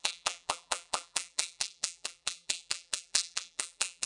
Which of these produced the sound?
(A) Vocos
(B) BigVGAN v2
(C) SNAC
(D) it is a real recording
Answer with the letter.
B